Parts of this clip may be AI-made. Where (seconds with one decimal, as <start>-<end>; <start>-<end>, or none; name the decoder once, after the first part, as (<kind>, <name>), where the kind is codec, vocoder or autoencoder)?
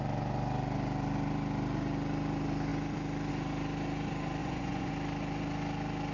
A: 4.4-4.9 (vocoder, Vocos)